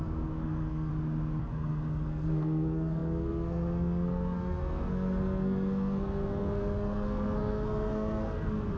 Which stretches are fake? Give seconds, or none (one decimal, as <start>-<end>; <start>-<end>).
0.0-0.9; 1.4-8.8